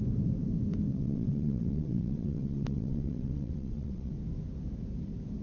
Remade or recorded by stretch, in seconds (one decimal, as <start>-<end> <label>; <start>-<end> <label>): 0.0-0.9 recorded; 0.9-4.1 remade; 4.1-5.4 recorded